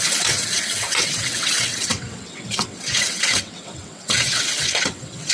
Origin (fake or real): fake